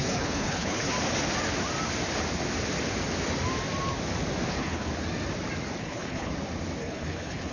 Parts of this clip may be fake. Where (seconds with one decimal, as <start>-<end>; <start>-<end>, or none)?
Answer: 0.0-0.9; 4.5-4.9; 5.8-6.3; 6.8-7.5